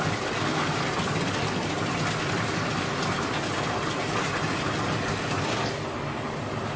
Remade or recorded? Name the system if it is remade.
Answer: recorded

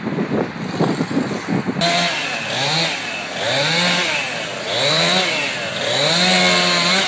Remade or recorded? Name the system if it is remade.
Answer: recorded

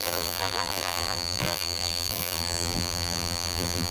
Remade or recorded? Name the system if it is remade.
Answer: remade, vocoder, BigVGAN v2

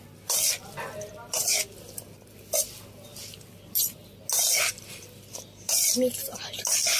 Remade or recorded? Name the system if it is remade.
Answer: recorded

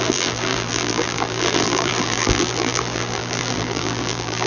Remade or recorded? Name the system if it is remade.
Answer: remade, vocoder, BigVGAN v2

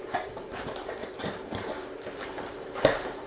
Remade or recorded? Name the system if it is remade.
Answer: remade, vocoder, BigVGAN v2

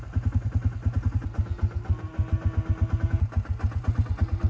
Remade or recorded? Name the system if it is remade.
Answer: recorded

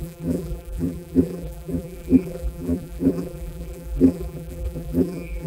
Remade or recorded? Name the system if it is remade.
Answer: remade, vocoder, BigVGAN v2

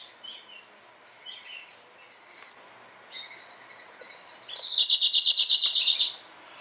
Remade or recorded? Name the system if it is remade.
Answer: recorded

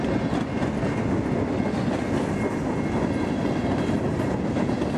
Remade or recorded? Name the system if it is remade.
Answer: recorded